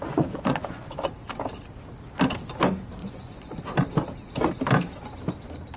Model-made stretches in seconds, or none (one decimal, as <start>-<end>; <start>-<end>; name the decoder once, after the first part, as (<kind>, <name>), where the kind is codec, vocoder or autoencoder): 0.0-0.9 (vocoder, Vocos); 3.0-3.6